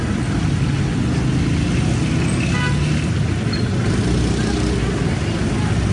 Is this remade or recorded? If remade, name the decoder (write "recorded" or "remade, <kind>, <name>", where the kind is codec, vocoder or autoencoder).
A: recorded